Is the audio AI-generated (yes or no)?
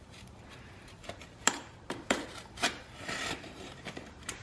yes